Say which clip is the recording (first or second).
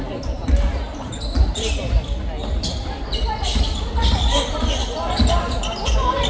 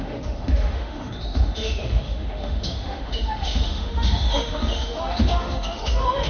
first